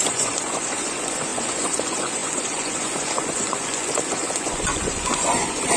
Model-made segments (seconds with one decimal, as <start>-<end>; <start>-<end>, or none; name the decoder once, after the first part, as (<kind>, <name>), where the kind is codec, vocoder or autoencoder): 0.0-5.8 (vocoder, Vocos)